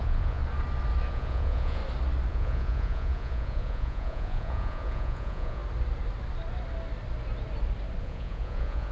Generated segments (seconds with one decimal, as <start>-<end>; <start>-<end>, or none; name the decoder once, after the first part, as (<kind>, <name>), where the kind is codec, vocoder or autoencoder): 0.0-0.4 (vocoder, Vocos); 1.1-1.8; 2.3-5.6; 8.0-8.9